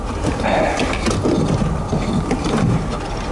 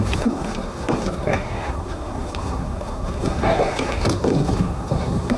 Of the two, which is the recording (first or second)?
first